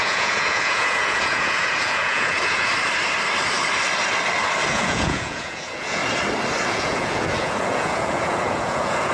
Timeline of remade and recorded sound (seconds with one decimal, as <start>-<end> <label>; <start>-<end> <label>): 0.0-2.7 remade; 2.7-4.7 recorded; 4.7-6.0 remade; 6.0-6.7 recorded; 6.7-9.1 remade